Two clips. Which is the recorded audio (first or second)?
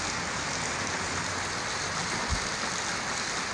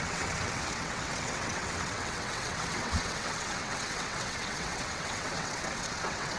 first